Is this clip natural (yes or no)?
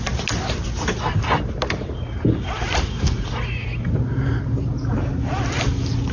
yes